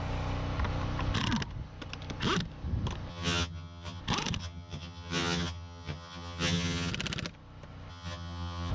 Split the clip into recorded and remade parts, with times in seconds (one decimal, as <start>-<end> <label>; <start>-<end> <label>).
0.0-3.1 recorded; 3.1-4.0 remade; 4.0-4.4 recorded; 4.4-6.9 remade; 6.9-7.9 recorded; 7.9-8.7 remade